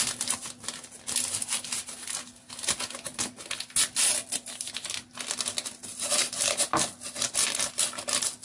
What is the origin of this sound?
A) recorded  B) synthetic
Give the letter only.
A